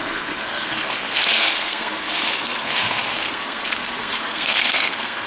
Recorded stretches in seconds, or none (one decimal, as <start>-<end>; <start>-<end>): none